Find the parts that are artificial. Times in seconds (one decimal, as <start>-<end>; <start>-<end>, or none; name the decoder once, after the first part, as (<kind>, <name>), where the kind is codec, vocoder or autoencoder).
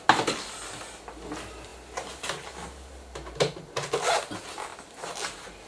none